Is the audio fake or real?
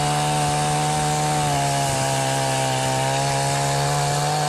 real